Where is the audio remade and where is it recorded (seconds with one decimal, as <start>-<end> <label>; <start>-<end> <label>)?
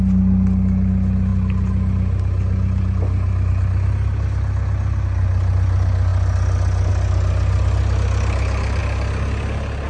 0.0-9.9 recorded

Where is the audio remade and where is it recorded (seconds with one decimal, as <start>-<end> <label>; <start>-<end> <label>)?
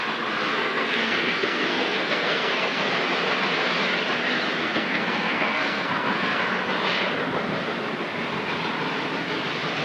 0.0-0.5 recorded; 0.5-2.9 remade; 2.9-4.6 recorded; 4.6-6.4 remade; 6.4-9.8 recorded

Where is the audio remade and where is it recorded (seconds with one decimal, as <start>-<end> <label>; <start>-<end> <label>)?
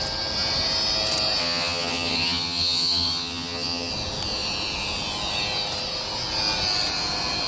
0.0-1.4 recorded; 1.4-3.9 remade; 3.9-7.5 recorded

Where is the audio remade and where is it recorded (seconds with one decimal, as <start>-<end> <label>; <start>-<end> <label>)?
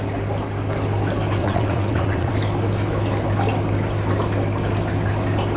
0.0-1.4 recorded; 1.4-2.3 remade; 2.3-5.6 recorded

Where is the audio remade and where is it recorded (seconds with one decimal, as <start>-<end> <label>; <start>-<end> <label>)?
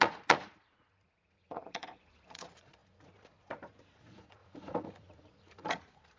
0.0-6.2 remade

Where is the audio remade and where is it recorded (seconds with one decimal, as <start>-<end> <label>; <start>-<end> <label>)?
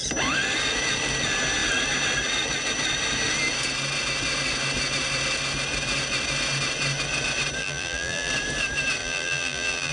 0.0-7.6 recorded; 7.6-8.3 remade; 8.3-9.0 recorded; 9.0-9.9 remade